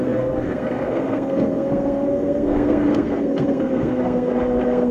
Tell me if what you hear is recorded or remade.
remade